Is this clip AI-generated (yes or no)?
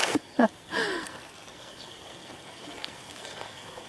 yes